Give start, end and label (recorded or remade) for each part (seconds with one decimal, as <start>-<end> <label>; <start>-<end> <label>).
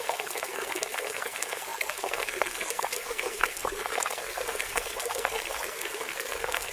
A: 0.0-6.7 remade